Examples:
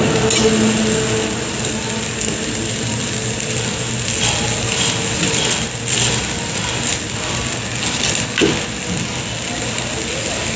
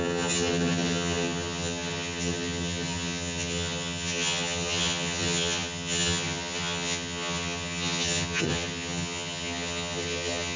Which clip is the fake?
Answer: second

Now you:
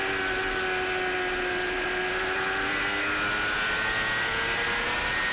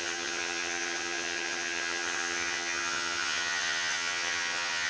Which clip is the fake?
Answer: second